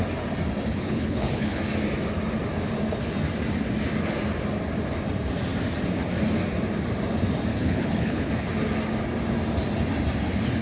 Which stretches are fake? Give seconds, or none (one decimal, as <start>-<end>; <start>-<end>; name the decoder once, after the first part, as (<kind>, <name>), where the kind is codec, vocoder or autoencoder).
0.7-1.6 (codec, HILCodec); 7.5-8.3